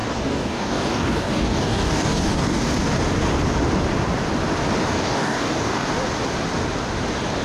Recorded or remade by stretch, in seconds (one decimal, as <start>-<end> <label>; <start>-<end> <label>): 0.0-2.7 remade; 2.7-4.9 recorded; 4.9-5.9 remade; 5.9-7.4 recorded